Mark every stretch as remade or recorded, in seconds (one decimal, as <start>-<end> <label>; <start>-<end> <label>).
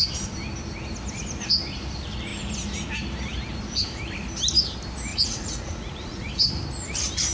0.0-5.1 recorded; 5.1-6.3 remade; 6.3-7.3 recorded